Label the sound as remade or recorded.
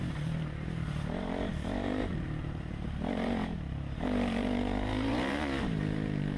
remade